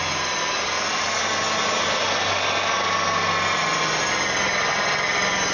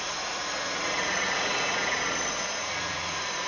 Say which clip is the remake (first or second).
second